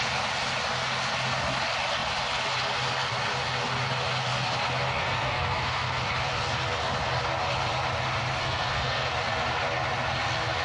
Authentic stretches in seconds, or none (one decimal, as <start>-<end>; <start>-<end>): 0.0-5.0; 6.0-8.4; 9.1-10.6